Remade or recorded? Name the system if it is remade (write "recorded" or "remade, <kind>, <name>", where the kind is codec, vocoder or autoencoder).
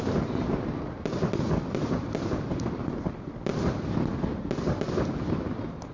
recorded